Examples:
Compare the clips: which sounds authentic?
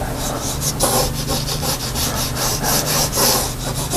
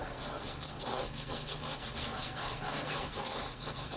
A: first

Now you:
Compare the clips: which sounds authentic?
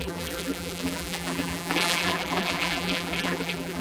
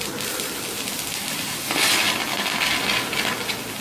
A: second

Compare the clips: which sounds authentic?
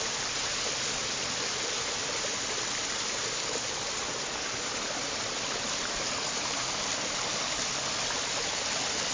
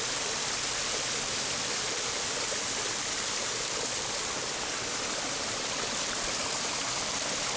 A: first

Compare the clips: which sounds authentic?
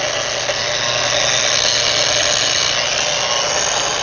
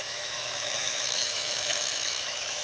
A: first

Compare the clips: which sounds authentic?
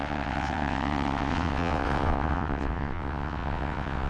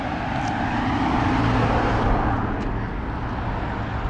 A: second